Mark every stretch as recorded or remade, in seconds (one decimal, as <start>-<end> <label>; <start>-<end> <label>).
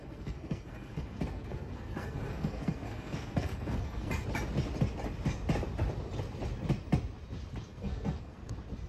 0.0-4.1 remade; 4.1-7.7 recorded; 7.7-8.5 remade; 8.5-8.9 recorded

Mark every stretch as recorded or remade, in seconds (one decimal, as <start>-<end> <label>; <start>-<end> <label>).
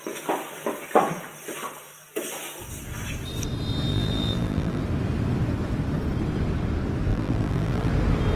0.0-3.9 recorded; 3.9-4.8 remade; 4.8-7.1 recorded; 7.1-7.9 remade; 7.9-8.4 recorded